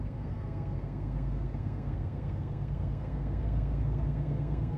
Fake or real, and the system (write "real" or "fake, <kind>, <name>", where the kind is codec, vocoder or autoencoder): fake, codec, SNAC